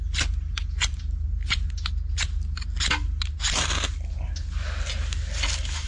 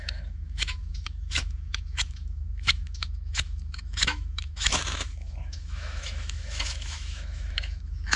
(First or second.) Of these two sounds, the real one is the first